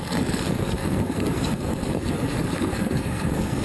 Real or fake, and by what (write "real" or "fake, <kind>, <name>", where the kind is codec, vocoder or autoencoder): fake, codec, SNAC